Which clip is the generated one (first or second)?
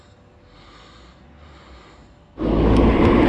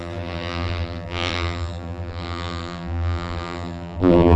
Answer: second